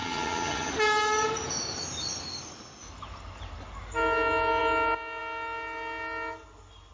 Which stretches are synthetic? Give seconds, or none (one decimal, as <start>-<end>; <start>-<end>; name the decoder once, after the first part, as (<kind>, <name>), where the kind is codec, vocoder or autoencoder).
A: 0.0-0.7 (vocoder, HiFi-GAN)